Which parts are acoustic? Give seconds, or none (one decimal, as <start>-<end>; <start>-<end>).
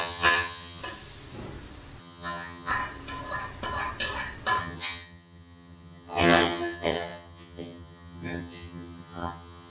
0.8-2.0; 2.7-4.6